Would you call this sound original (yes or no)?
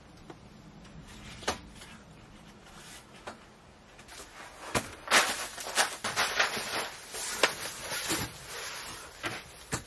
yes